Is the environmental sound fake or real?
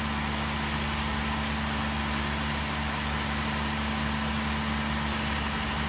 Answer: real